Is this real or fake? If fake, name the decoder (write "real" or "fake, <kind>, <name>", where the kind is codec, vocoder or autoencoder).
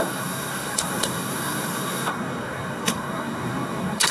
fake, codec, SNAC